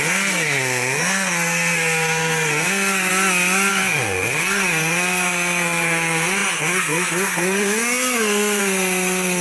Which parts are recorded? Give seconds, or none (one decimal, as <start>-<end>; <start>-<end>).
3.1-3.7